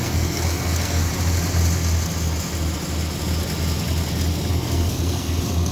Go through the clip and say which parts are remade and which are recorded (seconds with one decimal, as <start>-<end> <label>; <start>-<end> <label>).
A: 0.0-1.1 remade; 1.1-4.5 recorded; 4.5-5.7 remade